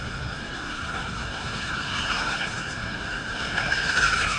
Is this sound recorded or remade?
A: remade